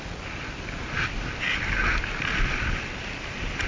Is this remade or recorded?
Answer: recorded